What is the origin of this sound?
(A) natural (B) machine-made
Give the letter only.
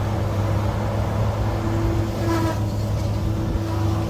A